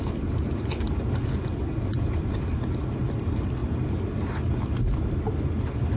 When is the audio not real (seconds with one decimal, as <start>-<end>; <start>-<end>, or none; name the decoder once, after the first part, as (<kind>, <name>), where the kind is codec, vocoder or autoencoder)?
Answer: 1.9-2.4 (vocoder, Vocos)